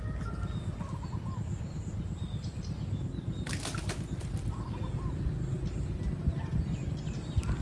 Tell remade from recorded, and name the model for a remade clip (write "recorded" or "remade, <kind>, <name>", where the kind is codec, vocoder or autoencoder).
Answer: recorded